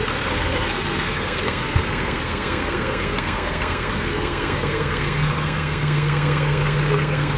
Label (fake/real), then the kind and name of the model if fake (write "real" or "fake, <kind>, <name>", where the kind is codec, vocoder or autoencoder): fake, codec, SNAC